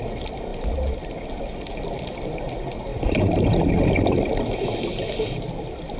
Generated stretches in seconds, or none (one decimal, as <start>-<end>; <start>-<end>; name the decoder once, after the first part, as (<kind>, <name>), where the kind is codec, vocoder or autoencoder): none